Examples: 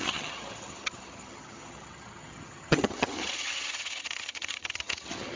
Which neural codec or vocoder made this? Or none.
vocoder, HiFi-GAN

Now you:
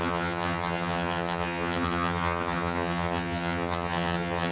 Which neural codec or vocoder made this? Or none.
vocoder, HiFi-GAN